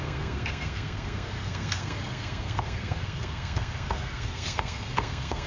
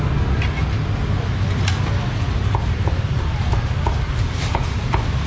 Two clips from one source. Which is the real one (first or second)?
second